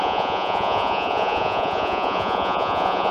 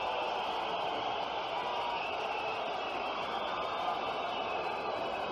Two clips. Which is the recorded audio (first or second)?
second